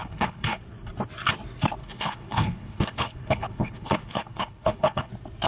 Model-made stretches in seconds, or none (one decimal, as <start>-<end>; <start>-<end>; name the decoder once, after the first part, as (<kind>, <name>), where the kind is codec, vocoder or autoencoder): 0.0-0.6 (codec, HILCodec); 1.8-5.1